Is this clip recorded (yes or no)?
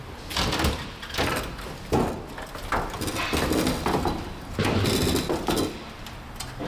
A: yes